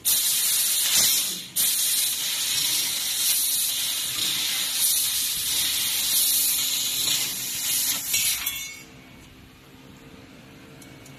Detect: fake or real real